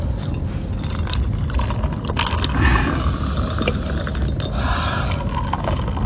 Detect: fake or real real